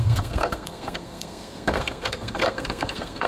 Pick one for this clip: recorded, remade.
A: remade